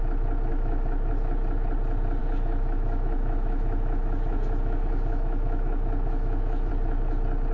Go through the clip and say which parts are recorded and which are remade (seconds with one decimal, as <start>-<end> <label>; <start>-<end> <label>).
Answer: 0.0-0.5 recorded; 0.5-1.1 remade; 1.1-2.2 recorded; 2.2-6.7 remade; 6.7-7.5 recorded